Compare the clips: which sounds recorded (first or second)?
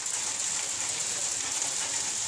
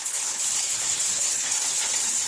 first